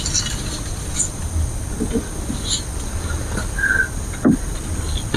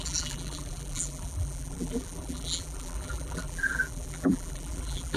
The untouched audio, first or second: first